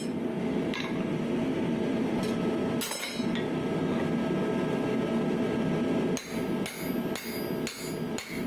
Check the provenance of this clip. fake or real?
real